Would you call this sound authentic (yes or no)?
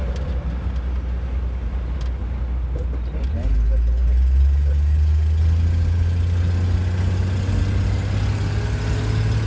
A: yes